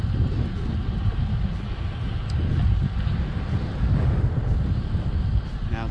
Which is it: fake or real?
real